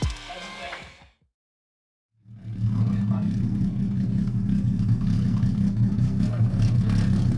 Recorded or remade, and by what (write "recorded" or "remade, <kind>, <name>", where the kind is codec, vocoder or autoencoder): remade, codec, SNAC